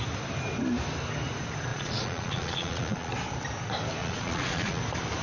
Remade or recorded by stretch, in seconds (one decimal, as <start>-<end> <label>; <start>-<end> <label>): 0.0-1.7 recorded; 1.7-3.1 remade; 3.1-4.0 recorded; 4.0-4.8 remade; 4.8-5.2 recorded